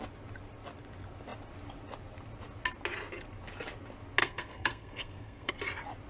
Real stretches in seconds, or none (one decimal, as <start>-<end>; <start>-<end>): 0.0-4.2; 5.5-6.1